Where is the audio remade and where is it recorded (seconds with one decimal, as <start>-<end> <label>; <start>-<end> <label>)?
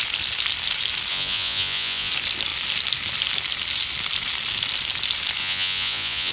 0.0-1.1 recorded; 1.1-2.1 remade; 2.1-5.4 recorded; 5.4-6.3 remade